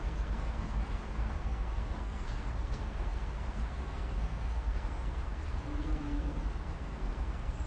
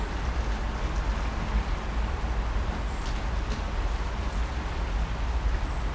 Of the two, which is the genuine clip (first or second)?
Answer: second